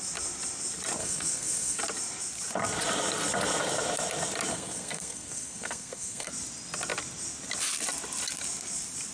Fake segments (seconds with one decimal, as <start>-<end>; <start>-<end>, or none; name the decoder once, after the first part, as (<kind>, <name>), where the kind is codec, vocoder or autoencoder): 1.0-1.8 (codec, SNAC); 4.5-6.3